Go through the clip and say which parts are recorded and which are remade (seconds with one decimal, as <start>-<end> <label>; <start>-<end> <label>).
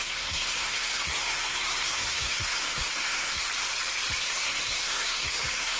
0.0-3.5 remade; 3.5-4.2 recorded; 4.2-5.8 remade